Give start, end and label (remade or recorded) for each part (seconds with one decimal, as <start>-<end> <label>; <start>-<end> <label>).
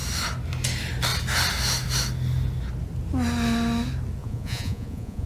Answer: 0.0-4.2 recorded; 4.2-5.3 remade